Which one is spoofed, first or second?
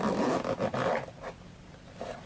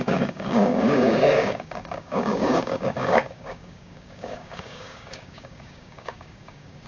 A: second